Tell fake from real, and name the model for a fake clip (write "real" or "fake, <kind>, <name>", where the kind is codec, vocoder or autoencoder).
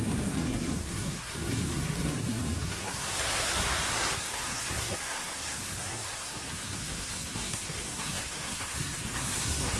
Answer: fake, codec, SNAC